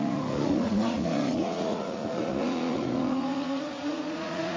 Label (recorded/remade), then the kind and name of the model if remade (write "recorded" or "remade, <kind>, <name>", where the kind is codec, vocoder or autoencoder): remade, vocoder, Vocos